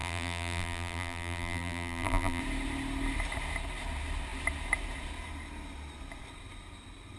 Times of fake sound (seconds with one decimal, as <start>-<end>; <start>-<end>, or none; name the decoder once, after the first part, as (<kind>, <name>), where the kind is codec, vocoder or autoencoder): 0.0-2.4 (vocoder, BigVGAN v2)